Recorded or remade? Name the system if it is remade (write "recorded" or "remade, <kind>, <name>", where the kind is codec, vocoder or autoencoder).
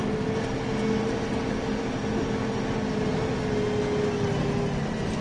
recorded